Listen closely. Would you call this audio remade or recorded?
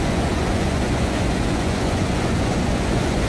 remade